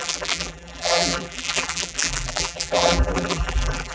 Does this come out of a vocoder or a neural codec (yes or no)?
yes